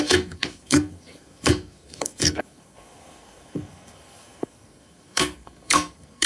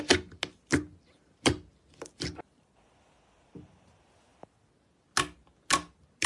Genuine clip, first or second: second